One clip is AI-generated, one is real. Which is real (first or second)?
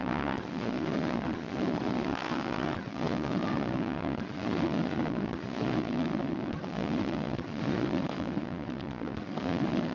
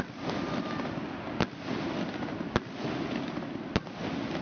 second